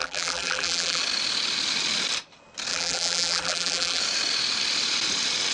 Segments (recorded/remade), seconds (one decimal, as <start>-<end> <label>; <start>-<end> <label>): 0.0-1.0 remade; 1.0-2.7 recorded; 2.7-4.0 remade; 4.0-5.5 recorded